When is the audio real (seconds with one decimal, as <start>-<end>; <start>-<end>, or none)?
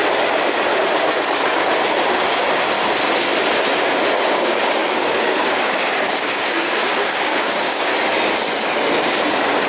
0.0-4.1; 7.9-9.7